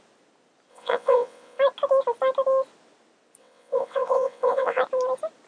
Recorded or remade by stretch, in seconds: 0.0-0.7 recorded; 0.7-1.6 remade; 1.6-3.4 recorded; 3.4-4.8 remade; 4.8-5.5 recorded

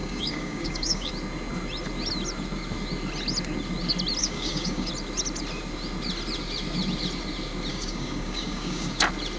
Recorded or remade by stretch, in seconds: 0.0-1.1 remade; 1.1-4.2 recorded; 4.2-4.9 remade; 4.9-7.7 recorded; 7.7-9.0 remade; 9.0-9.4 recorded

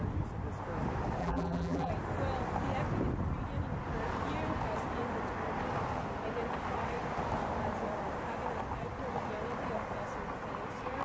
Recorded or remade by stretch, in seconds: 0.0-1.2 recorded; 1.2-1.9 remade; 1.9-11.0 recorded

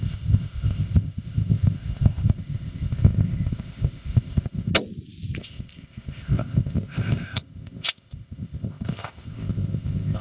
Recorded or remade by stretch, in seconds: 0.0-4.7 remade; 4.7-5.4 recorded; 5.4-10.2 remade

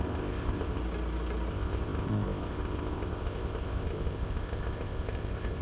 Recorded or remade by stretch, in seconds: 0.0-0.8 remade; 0.8-1.5 recorded; 1.5-5.6 remade